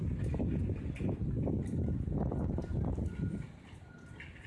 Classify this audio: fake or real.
real